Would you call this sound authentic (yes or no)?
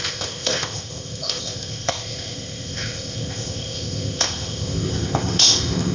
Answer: no